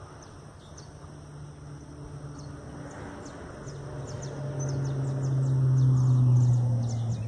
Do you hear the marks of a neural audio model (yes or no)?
no